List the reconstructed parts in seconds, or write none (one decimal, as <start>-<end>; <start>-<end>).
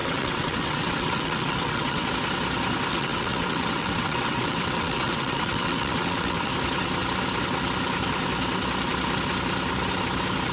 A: 0.0-2.1; 2.9-6.5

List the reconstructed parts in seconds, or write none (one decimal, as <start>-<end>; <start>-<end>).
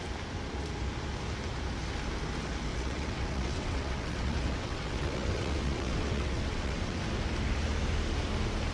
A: 2.7-7.0